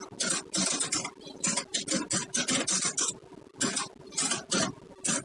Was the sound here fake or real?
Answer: real